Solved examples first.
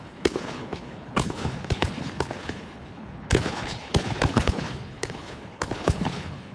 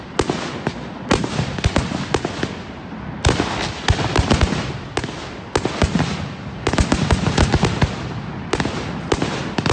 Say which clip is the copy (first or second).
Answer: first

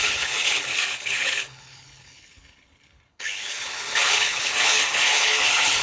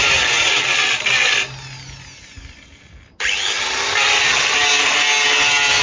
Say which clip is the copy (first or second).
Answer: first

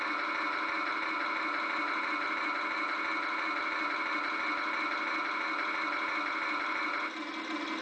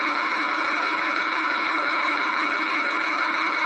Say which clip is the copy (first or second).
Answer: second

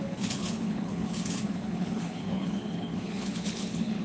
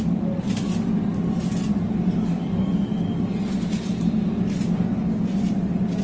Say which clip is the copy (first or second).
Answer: first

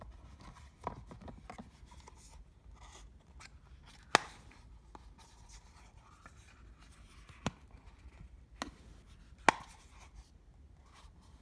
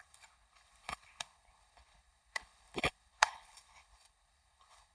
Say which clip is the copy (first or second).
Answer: second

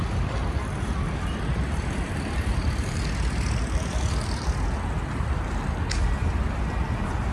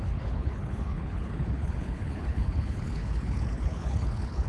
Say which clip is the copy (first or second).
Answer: second